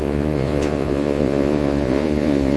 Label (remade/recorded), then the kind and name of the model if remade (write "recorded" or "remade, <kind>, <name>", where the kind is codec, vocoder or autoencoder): remade, vocoder, Vocos